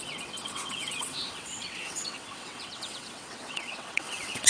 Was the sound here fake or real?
fake